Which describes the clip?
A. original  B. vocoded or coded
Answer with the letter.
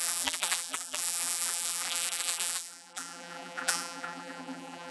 B